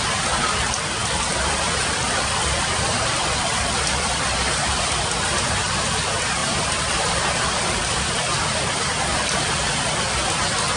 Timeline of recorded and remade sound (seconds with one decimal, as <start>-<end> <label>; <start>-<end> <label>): 0.0-1.0 recorded; 1.0-5.0 remade; 5.0-6.4 recorded; 6.4-10.2 remade; 10.2-10.8 recorded